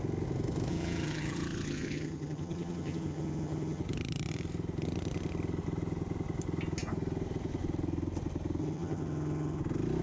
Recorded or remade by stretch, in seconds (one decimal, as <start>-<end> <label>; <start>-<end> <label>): 0.0-0.7 recorded; 0.7-3.8 remade; 3.8-8.6 recorded; 8.6-9.6 remade; 9.6-10.0 recorded